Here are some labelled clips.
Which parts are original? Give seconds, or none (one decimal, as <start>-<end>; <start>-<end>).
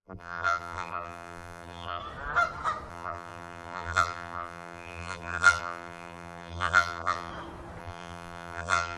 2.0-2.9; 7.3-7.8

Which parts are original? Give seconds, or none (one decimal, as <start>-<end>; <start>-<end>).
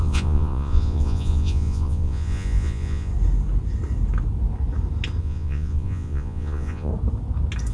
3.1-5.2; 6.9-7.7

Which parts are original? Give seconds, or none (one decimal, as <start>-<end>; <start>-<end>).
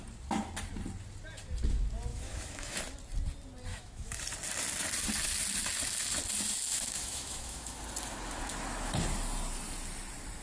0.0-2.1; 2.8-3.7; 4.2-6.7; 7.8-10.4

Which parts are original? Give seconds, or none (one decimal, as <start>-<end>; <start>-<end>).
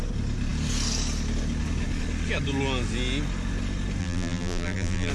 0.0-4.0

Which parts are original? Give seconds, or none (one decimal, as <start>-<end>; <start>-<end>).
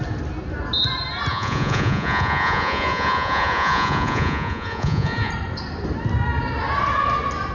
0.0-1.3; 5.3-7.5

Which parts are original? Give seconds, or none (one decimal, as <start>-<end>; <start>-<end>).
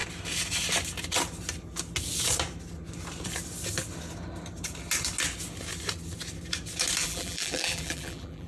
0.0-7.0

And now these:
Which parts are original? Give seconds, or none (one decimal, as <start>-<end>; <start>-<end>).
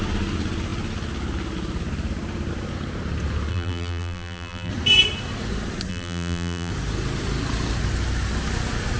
0.0-3.5; 4.7-5.9; 6.7-9.0